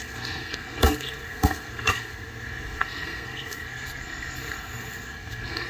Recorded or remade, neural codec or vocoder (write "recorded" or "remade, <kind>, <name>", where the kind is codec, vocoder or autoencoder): remade, codec, SNAC